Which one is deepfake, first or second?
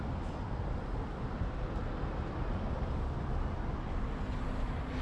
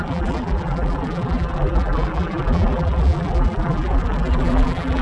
second